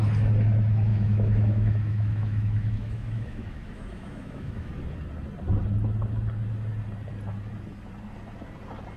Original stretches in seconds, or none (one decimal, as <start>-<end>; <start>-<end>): 0.0-0.9; 4.7-9.0